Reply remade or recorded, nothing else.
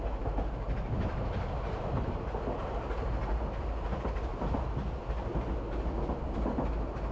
recorded